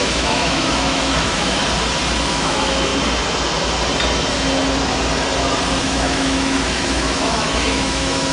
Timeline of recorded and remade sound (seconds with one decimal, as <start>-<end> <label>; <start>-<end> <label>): 0.0-1.6 remade; 1.6-2.3 recorded; 2.3-2.9 remade; 2.9-5.8 recorded; 5.8-8.3 remade